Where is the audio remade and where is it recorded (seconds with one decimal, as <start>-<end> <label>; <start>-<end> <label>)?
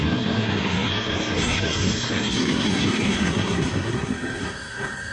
0.0-5.1 remade